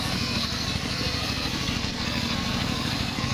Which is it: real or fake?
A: fake